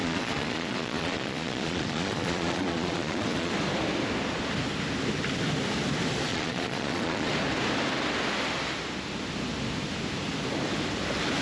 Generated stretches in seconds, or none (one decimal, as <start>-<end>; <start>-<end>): 0.0-3.5; 6.3-7.3